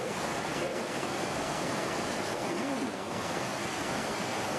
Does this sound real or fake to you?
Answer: fake